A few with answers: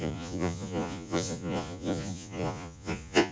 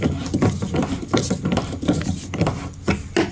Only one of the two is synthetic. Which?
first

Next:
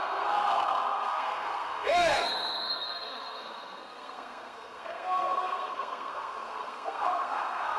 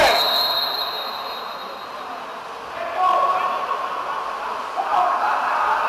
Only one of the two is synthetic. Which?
first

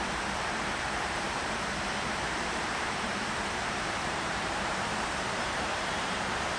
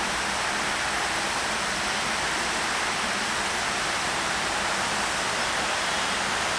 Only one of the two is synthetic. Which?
first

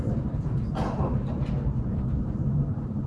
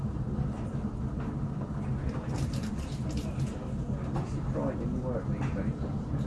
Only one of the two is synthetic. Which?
first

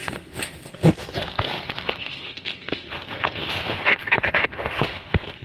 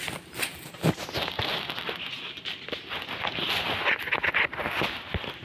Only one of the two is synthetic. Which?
first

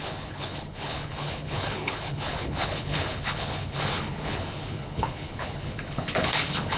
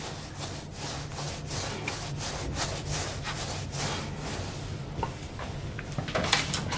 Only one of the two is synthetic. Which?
first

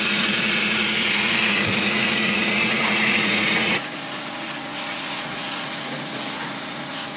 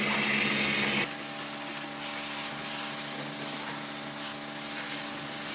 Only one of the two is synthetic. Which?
first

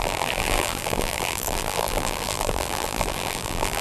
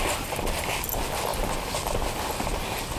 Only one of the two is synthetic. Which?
first